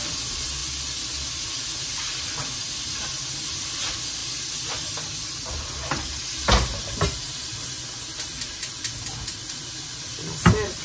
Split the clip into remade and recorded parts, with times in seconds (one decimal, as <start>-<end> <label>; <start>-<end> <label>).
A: 0.0-10.8 recorded